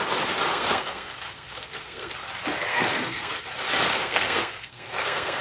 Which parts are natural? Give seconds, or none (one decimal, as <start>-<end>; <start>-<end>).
0.0-0.5; 2.1-2.7; 3.3-3.9